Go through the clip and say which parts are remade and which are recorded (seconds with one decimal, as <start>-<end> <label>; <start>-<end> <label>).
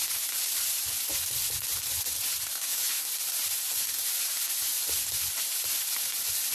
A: 0.0-2.5 recorded; 2.5-3.1 remade; 3.1-6.5 recorded